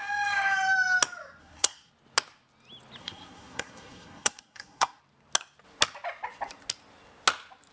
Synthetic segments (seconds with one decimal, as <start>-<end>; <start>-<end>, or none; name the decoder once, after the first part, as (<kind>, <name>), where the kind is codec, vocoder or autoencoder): 1.4-1.9 (codec, SNAC); 3.0-5.0